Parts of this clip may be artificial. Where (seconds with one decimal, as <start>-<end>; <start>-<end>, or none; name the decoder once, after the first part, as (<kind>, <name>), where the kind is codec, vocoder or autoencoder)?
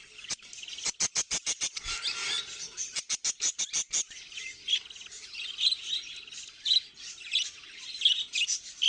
none